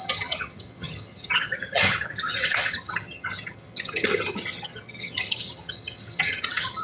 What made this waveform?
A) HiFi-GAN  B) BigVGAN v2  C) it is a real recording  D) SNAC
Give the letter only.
A